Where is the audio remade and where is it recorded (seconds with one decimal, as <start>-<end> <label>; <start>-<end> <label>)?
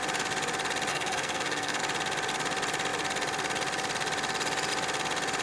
0.0-0.9 recorded; 0.9-1.8 remade; 1.8-5.4 recorded